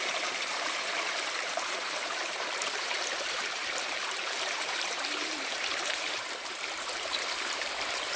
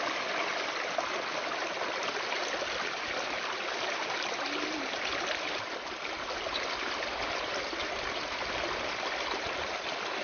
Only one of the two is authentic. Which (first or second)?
second